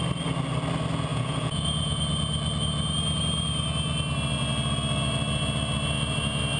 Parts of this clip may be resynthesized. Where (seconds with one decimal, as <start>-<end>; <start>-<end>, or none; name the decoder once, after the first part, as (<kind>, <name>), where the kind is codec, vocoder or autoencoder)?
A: 1.1-2.0 (vocoder, Vocos)